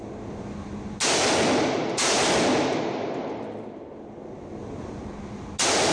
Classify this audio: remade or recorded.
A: recorded